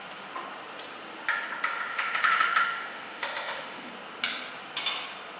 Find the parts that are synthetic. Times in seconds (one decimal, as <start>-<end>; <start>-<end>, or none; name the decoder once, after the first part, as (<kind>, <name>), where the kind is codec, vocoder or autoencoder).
1.9-3.9 (autoencoder, DAC-VAE)